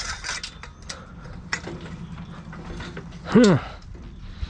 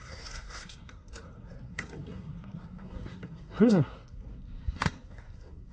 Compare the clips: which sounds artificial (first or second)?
second